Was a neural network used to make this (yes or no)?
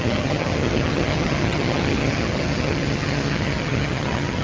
yes